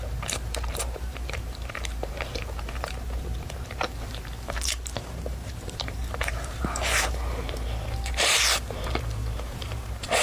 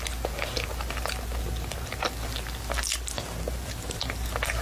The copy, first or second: first